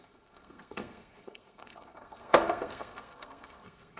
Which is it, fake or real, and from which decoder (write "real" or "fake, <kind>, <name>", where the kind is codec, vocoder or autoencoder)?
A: fake, codec, SNAC